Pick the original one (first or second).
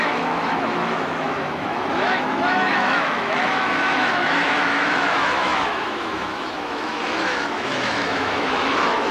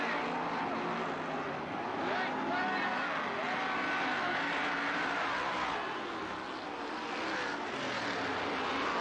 second